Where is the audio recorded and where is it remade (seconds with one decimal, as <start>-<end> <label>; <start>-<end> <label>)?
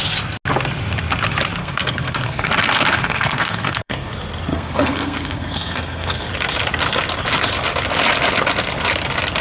0.0-1.6 recorded; 1.6-2.5 remade; 2.5-2.9 recorded; 2.9-4.1 remade; 4.1-4.5 recorded; 4.5-6.3 remade; 6.3-9.4 recorded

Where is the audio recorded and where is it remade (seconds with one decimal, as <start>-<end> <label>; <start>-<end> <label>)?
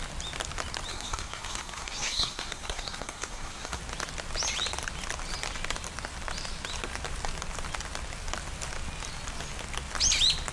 0.0-0.9 recorded; 0.9-3.8 remade; 3.8-10.5 recorded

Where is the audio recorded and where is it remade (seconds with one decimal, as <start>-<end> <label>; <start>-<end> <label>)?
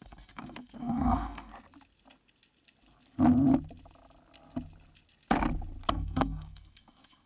0.0-1.5 remade; 1.5-5.9 recorded; 5.9-7.3 remade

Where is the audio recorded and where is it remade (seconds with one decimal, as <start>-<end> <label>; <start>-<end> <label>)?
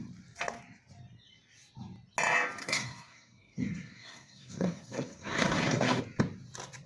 0.0-2.6 recorded; 2.6-6.0 remade; 6.0-6.9 recorded